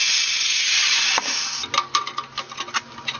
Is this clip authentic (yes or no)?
yes